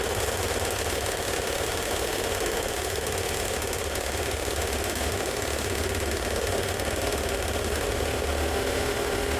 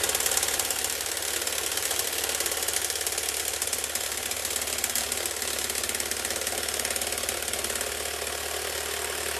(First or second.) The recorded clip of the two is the second